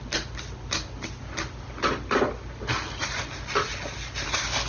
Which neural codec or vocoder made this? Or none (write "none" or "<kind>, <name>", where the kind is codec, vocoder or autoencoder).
none